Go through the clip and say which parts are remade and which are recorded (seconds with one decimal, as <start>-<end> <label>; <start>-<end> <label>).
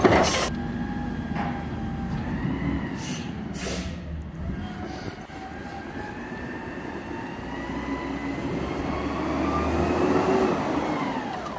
0.0-11.6 recorded